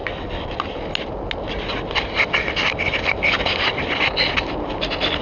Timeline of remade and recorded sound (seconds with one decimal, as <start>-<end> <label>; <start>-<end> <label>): 0.0-5.2 recorded

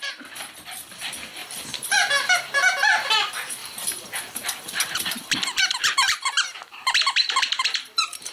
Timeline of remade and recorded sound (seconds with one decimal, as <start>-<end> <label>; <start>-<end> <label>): 0.0-1.4 recorded; 1.4-3.1 remade; 3.1-3.6 recorded; 3.6-8.3 remade